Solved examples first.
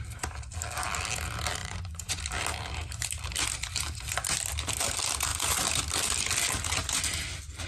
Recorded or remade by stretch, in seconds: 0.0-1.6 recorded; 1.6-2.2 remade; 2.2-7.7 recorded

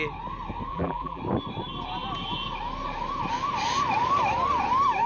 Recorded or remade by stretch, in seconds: 0.0-0.7 recorded; 0.7-1.2 remade; 1.2-5.1 recorded

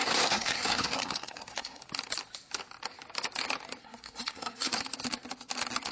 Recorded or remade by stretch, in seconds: 0.0-1.8 remade; 1.8-3.8 recorded; 3.8-4.7 remade; 4.7-5.9 recorded

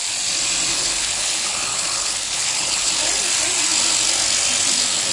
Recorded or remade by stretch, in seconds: 0.0-0.7 recorded; 0.7-2.9 remade; 2.9-5.1 recorded

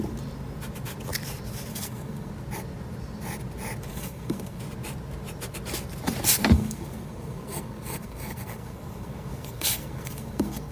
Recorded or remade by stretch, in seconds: 0.0-1.7 recorded; 1.7-2.3 remade; 2.3-3.9 recorded; 3.9-4.6 remade; 4.6-6.4 recorded; 6.4-10.7 remade